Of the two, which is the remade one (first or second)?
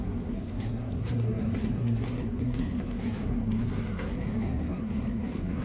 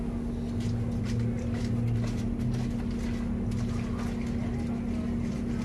first